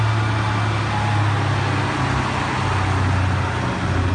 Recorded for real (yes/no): yes